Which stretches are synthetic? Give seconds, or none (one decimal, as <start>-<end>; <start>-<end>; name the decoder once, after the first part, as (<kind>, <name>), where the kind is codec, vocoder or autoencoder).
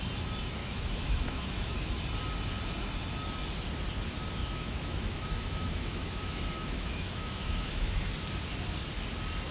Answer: 0.6-2.0 (autoencoder, DAC-VAE); 4.4-8.1